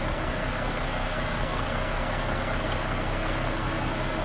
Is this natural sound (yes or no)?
no